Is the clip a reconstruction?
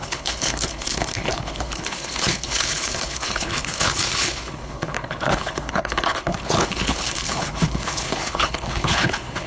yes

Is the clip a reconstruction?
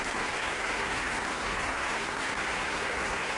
yes